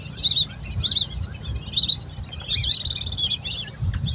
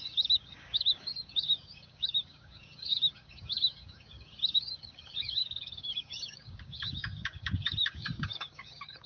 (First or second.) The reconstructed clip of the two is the second